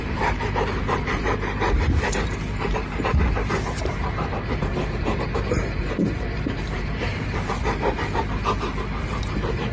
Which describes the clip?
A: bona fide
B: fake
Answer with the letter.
B